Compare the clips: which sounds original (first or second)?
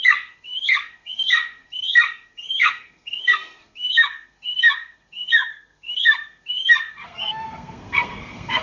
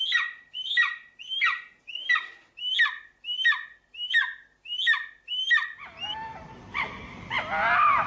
second